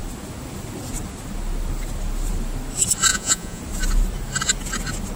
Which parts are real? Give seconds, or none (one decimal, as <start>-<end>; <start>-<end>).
0.0-3.1; 3.6-5.2